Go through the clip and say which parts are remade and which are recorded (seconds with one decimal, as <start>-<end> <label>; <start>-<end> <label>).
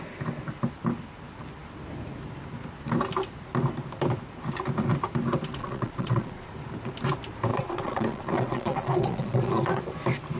0.0-5.6 recorded; 5.6-6.5 remade; 6.5-7.5 recorded; 7.5-9.8 remade; 9.8-10.4 recorded